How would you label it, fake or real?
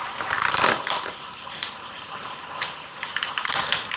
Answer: fake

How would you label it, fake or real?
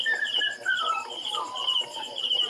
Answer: real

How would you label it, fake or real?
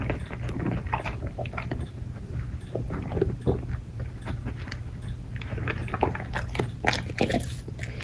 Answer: real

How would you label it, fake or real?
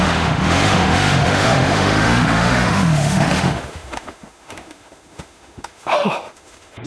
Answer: fake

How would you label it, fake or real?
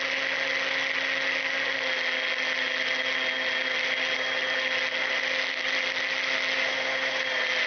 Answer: real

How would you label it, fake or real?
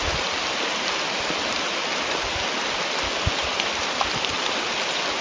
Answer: real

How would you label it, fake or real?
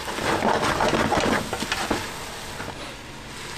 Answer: real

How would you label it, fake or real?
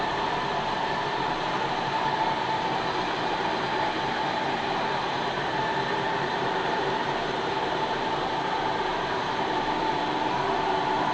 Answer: fake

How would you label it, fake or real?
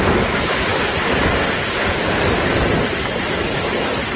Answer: real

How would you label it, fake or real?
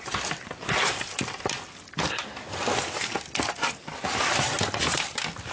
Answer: real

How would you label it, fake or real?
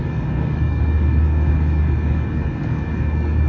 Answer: fake